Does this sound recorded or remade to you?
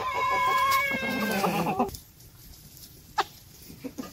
remade